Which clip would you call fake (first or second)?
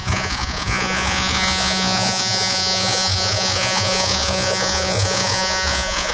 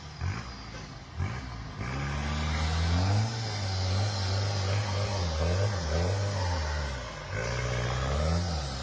first